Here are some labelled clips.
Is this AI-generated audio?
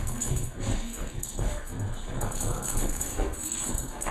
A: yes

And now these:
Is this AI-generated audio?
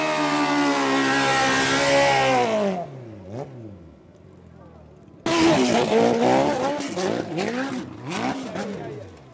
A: no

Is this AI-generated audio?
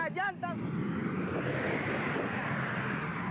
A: no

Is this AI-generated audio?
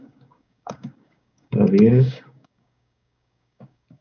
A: yes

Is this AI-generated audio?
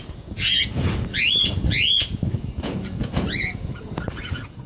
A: yes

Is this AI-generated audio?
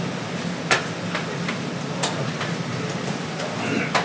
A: no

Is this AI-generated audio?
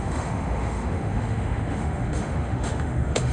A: yes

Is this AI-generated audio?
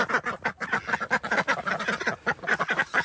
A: no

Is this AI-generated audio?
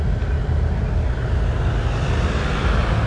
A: no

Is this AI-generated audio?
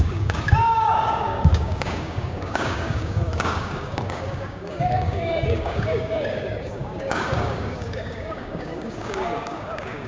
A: yes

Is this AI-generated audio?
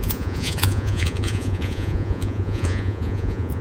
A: yes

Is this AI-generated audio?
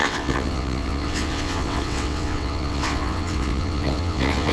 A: yes